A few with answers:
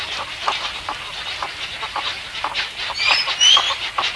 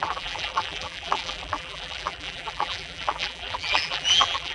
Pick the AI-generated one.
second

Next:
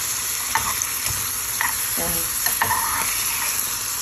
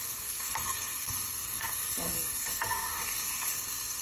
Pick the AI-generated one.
second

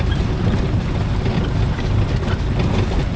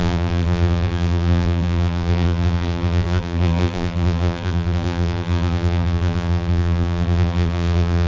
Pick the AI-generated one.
second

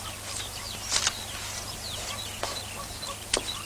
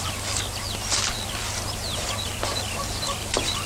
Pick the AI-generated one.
second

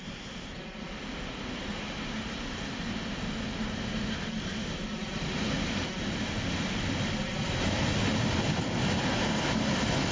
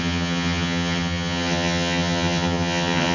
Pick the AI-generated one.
second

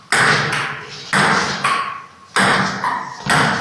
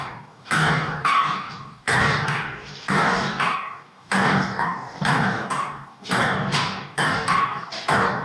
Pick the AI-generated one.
second